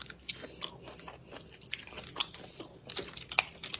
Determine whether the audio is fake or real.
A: real